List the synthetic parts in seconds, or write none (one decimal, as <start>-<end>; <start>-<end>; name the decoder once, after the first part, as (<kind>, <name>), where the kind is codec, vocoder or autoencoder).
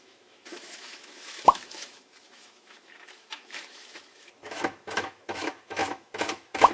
0.0-6.7 (autoencoder, DAC-VAE)